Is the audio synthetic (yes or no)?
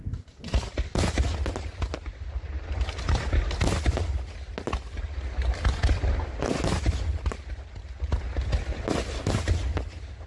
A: no